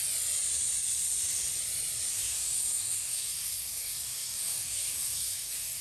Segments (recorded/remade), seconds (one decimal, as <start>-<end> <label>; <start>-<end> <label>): 0.0-2.1 recorded; 2.1-5.8 remade